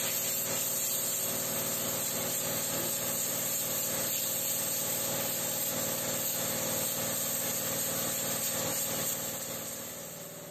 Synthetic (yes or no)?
no